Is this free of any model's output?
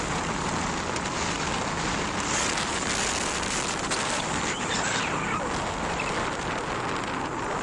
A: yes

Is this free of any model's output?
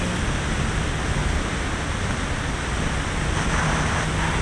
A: yes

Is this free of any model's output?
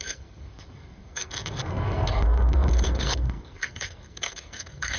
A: no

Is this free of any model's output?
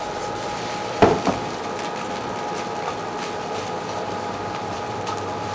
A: no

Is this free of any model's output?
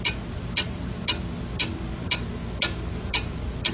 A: yes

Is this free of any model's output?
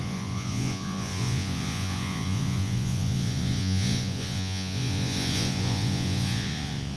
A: no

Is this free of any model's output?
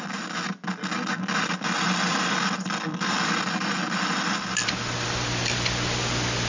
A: yes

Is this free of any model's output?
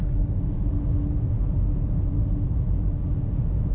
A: yes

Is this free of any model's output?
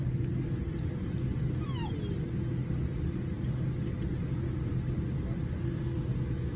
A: yes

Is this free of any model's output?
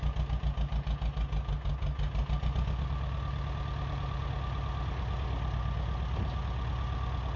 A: yes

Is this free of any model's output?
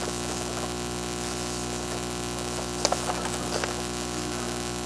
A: yes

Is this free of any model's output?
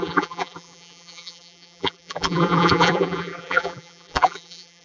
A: no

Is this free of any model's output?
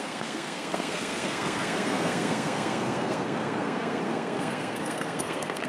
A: no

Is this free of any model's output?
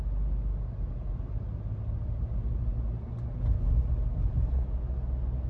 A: yes